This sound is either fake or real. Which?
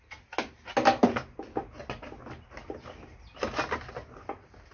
real